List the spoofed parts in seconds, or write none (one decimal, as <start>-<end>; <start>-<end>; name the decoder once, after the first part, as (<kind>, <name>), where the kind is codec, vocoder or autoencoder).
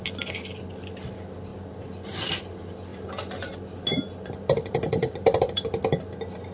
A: 1.5-2.4 (vocoder, BigVGAN v2); 2.9-5.4